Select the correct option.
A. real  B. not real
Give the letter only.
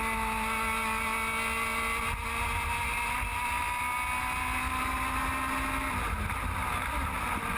A